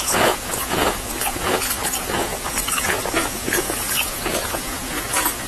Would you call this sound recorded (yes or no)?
no